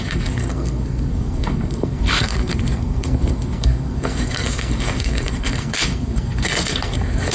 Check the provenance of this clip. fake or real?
fake